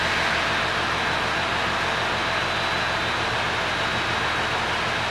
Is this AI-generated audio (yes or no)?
no